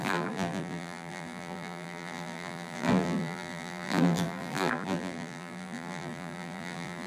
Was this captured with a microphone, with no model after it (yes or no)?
no